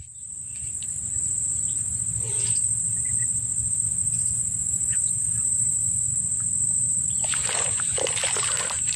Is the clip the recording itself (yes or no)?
yes